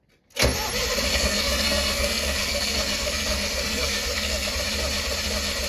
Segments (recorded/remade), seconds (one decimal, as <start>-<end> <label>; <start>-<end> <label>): 0.0-1.1 recorded; 1.1-4.5 remade; 4.5-5.7 recorded